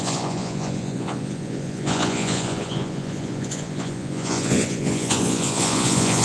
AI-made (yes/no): yes